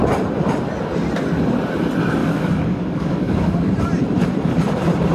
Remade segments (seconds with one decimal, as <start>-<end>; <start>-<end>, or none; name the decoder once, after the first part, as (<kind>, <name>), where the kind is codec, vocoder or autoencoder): 2.2-3.7 (codec, DAC)